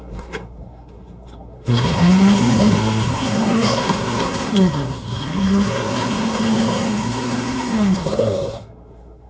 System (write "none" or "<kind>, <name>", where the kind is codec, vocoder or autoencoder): codec, SNAC